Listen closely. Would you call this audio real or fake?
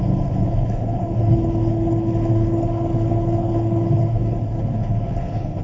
fake